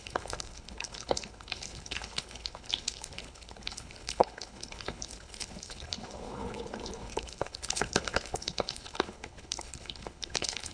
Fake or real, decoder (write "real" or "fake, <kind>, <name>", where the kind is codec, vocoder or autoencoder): fake, codec, HILCodec